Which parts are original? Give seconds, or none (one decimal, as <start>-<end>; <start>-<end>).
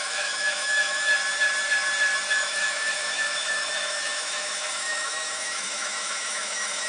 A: 1.1-2.3